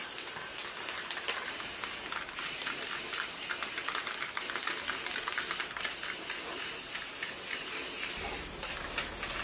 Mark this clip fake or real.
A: fake